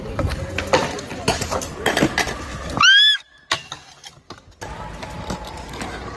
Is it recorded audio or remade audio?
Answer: recorded